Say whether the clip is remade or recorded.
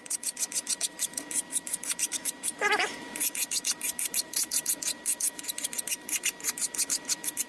remade